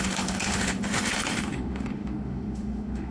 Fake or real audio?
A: fake